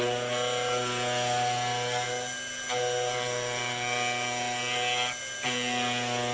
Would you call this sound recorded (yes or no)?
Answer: yes